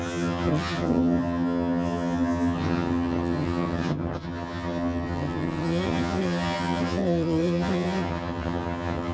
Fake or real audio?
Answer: fake